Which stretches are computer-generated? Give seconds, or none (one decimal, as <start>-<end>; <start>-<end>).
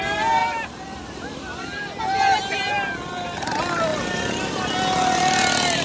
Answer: 0.4-2.0; 3.9-4.7